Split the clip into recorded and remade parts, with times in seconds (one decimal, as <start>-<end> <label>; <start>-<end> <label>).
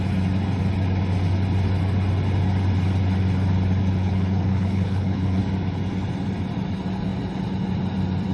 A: 0.0-4.0 recorded; 4.0-5.4 remade; 5.4-8.3 recorded